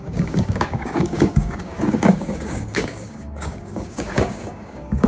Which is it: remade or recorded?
remade